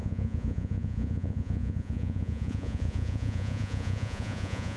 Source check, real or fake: fake